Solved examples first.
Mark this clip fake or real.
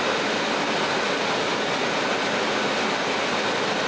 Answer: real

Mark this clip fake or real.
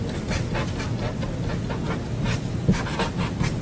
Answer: real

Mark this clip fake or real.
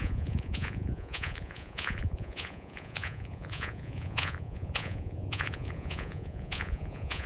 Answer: fake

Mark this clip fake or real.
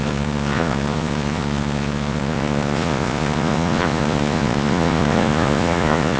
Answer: fake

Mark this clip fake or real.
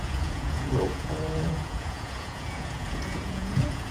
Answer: fake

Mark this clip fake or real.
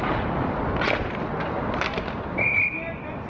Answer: real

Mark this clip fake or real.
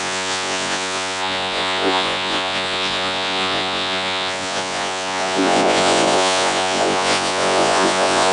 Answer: fake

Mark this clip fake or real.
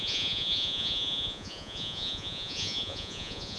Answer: fake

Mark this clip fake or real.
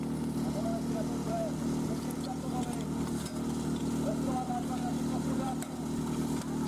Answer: real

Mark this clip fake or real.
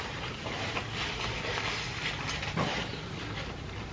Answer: real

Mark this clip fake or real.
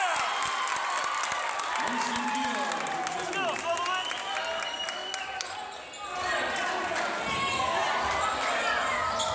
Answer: real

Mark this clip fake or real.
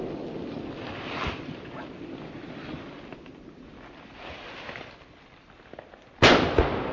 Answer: real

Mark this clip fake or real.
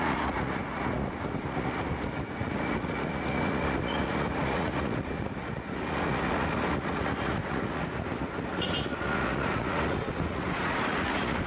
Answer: fake